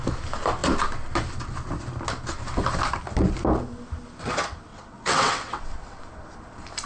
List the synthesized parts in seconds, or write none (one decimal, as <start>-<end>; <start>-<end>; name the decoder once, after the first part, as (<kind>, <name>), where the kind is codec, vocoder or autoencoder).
4.7-6.0 (vocoder, WaveNeXt)